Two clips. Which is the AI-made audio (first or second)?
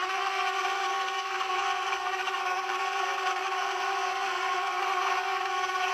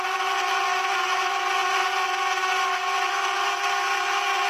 first